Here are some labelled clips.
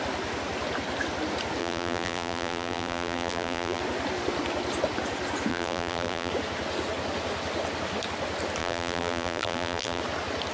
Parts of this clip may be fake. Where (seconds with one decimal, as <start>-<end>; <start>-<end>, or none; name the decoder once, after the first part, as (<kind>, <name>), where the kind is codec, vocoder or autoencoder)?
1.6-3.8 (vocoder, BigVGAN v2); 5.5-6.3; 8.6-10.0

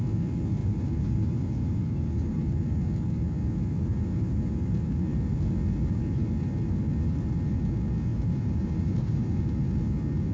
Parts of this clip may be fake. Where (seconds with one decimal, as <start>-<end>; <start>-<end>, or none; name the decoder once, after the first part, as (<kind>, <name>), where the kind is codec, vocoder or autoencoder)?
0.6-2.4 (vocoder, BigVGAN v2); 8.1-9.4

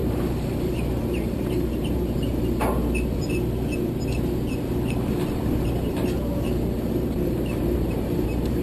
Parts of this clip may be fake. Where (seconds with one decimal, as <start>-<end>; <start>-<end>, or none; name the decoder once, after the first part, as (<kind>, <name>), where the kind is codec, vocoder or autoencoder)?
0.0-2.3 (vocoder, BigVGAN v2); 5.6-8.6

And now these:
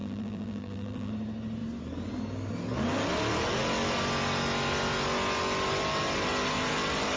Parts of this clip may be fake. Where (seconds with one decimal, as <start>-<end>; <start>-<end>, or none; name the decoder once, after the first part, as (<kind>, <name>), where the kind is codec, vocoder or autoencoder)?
0.0-1.1 (vocoder, BigVGAN v2)

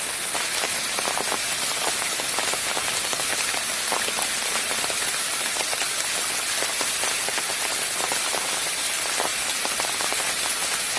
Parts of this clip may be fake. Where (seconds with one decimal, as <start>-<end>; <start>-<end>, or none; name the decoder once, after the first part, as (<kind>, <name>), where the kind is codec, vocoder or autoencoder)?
9.3-10.0 (vocoder, BigVGAN v2)

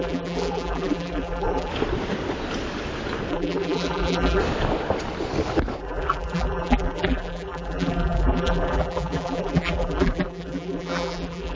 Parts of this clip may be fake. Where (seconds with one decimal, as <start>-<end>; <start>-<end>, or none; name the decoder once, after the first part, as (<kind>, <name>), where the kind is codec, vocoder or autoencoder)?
0.0-1.7 (vocoder, BigVGAN v2); 3.3-4.4; 5.8-11.6

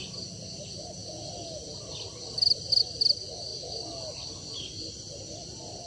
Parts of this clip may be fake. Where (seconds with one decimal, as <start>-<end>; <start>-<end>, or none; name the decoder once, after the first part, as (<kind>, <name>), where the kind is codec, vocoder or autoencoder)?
none